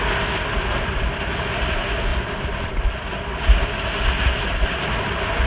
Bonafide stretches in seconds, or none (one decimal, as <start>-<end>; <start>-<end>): 0.0-5.5